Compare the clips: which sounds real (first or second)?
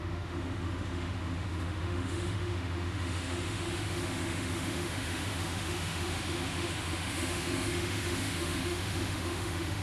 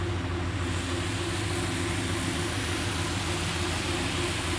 second